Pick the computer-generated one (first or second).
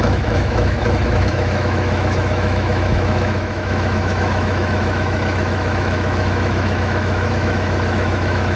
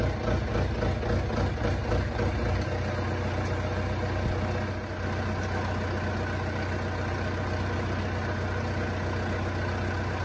first